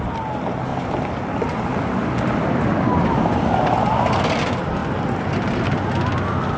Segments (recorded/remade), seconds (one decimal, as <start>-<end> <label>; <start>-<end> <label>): 0.0-6.6 recorded